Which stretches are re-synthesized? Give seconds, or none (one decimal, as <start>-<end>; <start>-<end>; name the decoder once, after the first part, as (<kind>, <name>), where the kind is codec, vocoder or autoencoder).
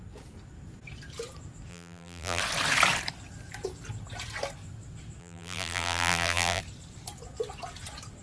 1.7-2.4 (vocoder, BigVGAN v2); 5.2-6.6